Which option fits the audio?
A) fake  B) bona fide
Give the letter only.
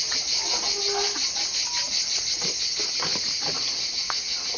B